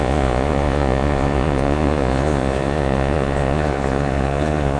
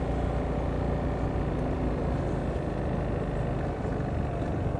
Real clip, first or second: second